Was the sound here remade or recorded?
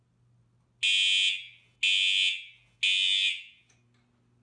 recorded